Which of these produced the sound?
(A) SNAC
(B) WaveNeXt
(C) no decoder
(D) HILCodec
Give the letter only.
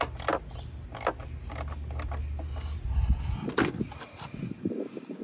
C